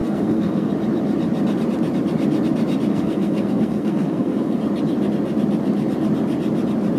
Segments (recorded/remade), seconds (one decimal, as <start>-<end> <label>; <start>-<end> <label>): 0.0-0.7 remade; 0.7-2.9 recorded; 2.9-4.6 remade; 4.6-7.0 recorded

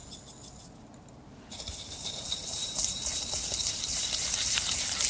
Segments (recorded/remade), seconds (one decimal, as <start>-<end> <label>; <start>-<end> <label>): 0.0-1.1 recorded; 1.1-5.1 remade